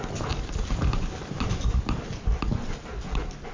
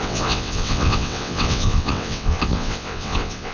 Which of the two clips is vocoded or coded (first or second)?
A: second